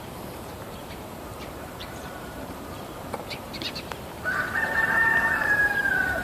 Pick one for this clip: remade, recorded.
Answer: remade